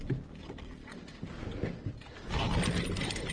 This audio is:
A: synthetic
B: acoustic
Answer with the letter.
B